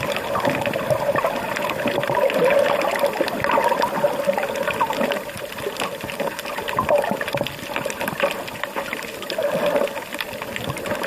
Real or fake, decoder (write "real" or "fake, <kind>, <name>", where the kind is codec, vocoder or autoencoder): real